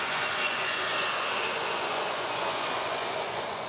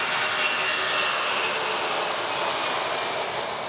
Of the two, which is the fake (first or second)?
first